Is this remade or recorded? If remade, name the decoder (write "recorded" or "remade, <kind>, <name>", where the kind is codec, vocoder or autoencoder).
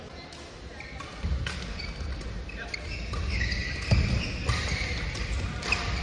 recorded